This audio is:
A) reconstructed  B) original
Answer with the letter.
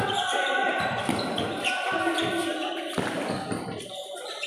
B